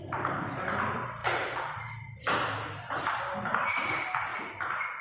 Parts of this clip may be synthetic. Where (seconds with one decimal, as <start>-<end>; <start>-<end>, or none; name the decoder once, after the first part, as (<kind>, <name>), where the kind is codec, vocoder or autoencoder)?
none